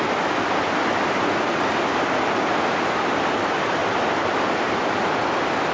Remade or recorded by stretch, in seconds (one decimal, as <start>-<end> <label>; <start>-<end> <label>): 0.0-5.7 recorded